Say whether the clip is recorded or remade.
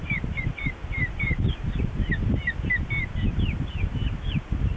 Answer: recorded